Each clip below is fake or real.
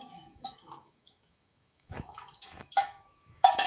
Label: fake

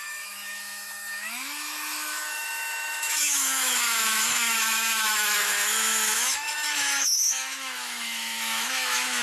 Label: fake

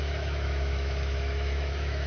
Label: fake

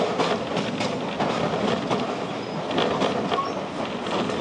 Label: real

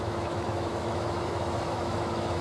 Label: fake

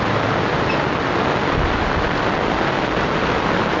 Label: real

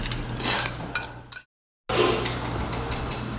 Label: real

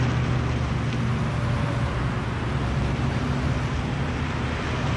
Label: real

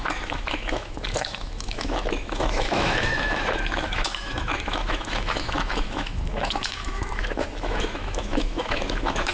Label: fake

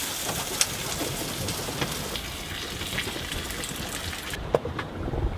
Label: real